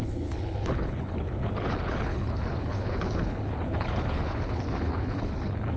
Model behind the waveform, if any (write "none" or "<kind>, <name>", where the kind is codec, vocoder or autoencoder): codec, HILCodec